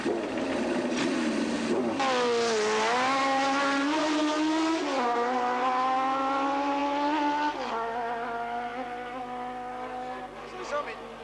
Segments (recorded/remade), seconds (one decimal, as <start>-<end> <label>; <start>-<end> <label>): 0.0-11.2 recorded